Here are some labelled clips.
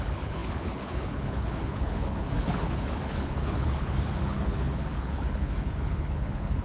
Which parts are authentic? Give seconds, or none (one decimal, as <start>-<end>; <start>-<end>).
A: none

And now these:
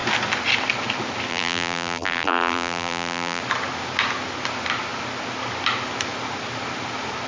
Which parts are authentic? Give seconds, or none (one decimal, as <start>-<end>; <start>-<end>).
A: 0.0-1.3; 3.4-7.3

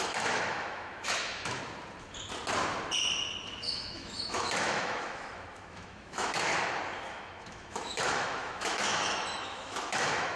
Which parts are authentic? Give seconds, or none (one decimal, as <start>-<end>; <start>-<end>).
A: 1.6-3.6; 6.5-7.1

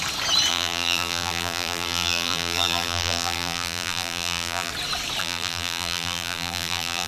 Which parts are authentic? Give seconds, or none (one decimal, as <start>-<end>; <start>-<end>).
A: 0.0-0.5; 4.7-5.2

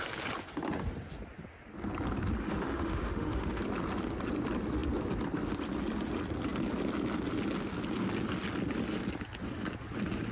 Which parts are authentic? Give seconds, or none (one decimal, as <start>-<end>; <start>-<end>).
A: 0.0-2.4; 3.6-10.3

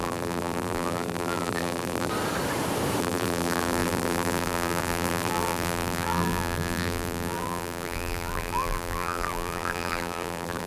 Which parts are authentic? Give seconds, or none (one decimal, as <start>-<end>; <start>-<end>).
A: 2.1-3.0

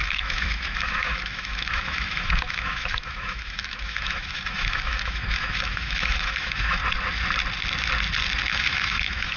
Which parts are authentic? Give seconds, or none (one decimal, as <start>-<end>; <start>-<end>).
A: 6.8-8.5